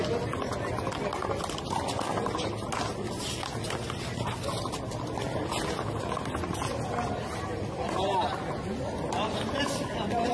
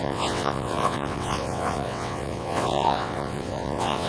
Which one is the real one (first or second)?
first